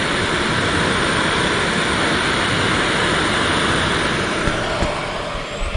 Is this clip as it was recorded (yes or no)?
yes